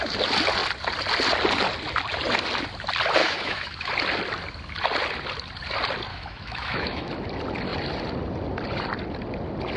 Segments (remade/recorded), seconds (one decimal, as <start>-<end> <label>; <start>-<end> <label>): 0.0-3.2 recorded; 3.2-3.9 remade; 3.9-6.1 recorded; 6.1-7.1 remade; 7.1-9.8 recorded